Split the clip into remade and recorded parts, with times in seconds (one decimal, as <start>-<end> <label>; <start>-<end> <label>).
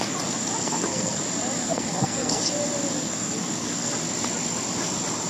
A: 0.0-0.6 recorded; 0.6-1.2 remade; 1.2-1.6 recorded; 1.6-2.4 remade; 2.4-3.0 recorded; 3.0-3.9 remade; 3.9-5.3 recorded